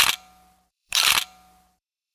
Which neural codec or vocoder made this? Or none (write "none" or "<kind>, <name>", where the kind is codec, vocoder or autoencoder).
vocoder, BigVGAN v2